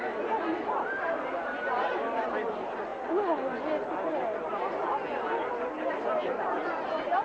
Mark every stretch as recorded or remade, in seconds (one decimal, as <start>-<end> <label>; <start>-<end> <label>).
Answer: 0.0-6.2 recorded; 6.2-7.2 remade